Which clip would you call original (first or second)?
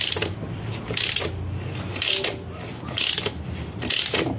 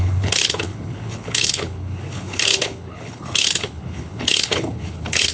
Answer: first